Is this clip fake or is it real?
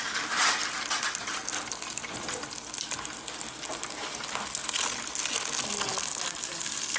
real